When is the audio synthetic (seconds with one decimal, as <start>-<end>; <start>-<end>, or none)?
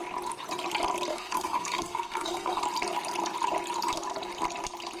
1.1-2.6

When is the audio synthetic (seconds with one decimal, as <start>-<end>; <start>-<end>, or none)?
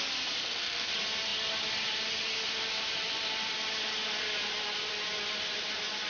0.4-0.9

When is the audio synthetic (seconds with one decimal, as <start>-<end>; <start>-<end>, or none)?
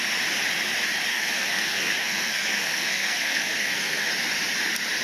1.1-4.1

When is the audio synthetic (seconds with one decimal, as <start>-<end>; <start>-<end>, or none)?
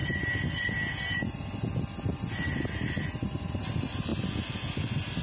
none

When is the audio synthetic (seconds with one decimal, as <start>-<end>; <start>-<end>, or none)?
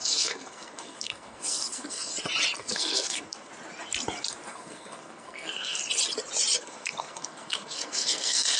0.0-2.1; 2.6-3.5; 4.5-5.8; 6.6-8.6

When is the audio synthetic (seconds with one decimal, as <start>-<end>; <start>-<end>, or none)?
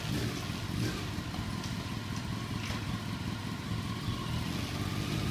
none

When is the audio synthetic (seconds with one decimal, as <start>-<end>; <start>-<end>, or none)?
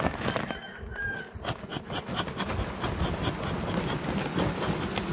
none